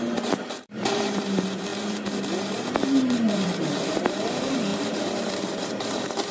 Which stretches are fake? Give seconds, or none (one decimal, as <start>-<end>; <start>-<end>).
0.0-6.3

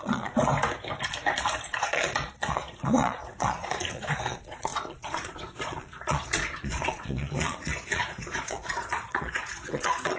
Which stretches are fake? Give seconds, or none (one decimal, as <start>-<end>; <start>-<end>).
0.0-0.4; 1.8-10.2

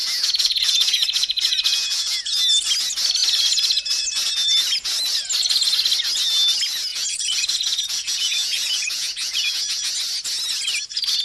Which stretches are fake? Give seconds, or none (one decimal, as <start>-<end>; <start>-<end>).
0.0-2.4; 6.9-9.9

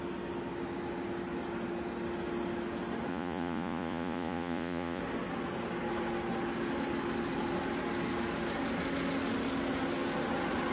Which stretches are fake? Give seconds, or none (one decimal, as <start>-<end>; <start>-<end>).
3.1-5.0

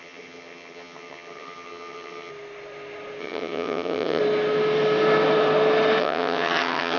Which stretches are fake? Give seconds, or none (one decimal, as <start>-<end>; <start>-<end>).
0.0-2.3; 3.2-4.2; 6.0-7.0

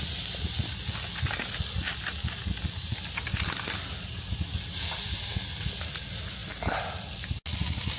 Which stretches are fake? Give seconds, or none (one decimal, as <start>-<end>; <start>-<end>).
none

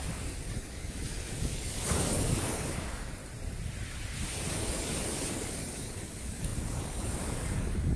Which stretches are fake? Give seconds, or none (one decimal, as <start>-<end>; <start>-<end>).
0.0-3.2; 4.5-8.0